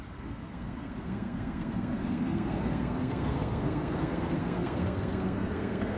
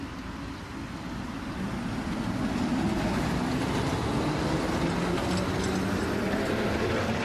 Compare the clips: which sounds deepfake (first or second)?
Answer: first